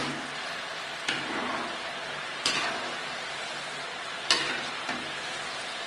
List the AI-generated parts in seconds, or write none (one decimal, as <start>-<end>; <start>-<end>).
0.0-3.5